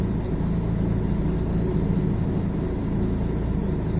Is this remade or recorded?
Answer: recorded